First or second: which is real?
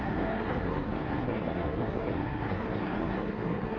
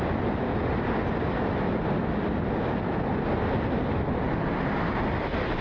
second